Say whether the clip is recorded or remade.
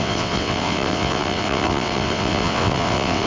remade